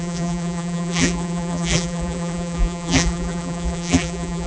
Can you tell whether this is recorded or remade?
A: remade